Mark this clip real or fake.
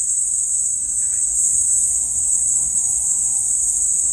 fake